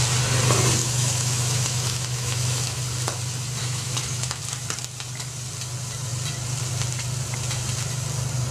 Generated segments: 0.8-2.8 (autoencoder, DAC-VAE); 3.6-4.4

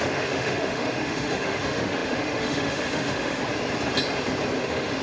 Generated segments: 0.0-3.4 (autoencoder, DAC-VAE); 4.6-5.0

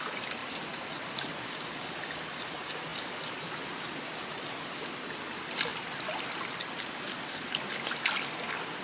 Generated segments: none